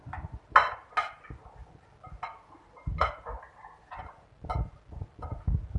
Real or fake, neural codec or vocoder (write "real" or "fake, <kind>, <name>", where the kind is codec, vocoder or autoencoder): real